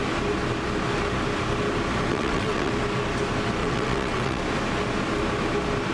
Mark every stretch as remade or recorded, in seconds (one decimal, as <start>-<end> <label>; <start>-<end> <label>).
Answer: 0.0-2.1 recorded; 2.1-2.7 remade; 2.7-3.6 recorded; 3.6-4.4 remade; 4.4-5.9 recorded